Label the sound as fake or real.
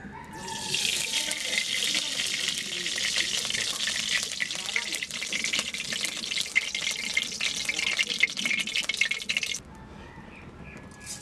real